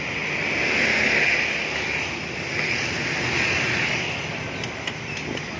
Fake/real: real